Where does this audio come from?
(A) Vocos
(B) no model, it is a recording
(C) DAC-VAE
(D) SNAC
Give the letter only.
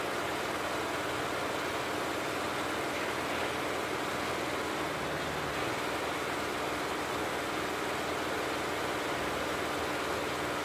B